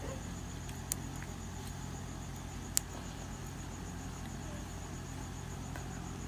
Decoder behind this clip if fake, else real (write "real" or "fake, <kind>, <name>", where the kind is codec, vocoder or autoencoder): real